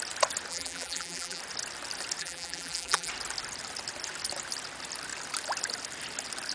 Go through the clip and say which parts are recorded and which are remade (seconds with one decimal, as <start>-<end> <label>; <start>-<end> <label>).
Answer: 0.0-0.5 recorded; 0.5-1.4 remade; 1.4-2.2 recorded; 2.2-3.1 remade; 3.1-6.5 recorded